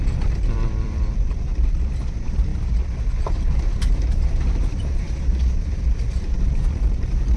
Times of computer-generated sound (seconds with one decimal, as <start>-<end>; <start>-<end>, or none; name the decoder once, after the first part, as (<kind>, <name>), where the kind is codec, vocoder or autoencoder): 0.0-1.5 (vocoder, BigVGAN v2); 2.1-2.5; 3.2-7.4